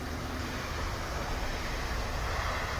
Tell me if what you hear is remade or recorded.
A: recorded